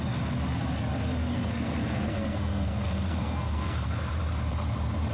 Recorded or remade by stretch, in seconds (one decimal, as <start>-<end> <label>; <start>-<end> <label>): 0.0-1.3 recorded; 1.3-4.0 remade; 4.0-5.1 recorded